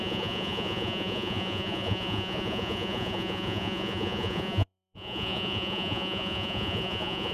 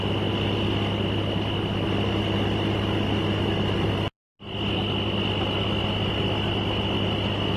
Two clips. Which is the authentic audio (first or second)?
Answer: second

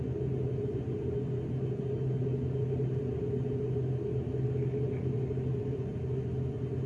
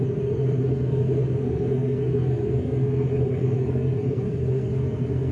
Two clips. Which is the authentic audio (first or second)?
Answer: first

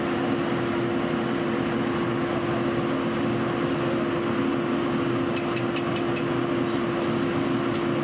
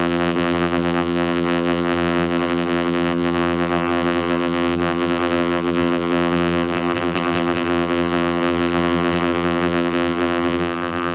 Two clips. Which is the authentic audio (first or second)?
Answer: first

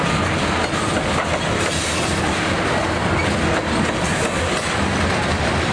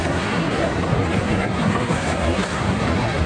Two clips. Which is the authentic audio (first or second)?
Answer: first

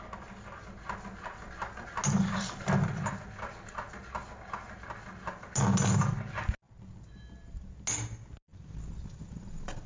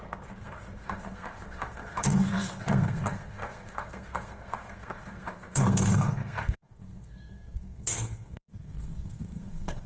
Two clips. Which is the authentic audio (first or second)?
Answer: first